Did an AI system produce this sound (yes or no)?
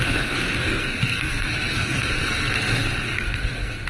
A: yes